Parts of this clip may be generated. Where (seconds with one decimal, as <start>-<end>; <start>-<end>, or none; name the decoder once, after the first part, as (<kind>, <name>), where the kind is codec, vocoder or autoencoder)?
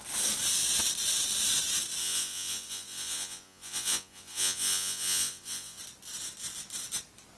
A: 2.0-5.8 (vocoder, Vocos)